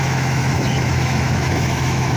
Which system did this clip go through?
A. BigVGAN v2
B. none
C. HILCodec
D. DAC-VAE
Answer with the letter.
D